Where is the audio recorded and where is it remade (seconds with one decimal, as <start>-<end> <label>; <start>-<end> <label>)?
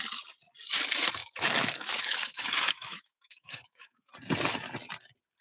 0.0-1.2 recorded; 1.2-4.1 remade; 4.1-5.4 recorded